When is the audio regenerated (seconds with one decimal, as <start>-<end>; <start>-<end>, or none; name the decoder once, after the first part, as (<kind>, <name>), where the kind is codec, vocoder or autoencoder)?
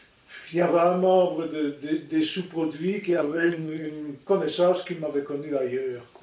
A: 3.1-3.9 (codec, HILCodec)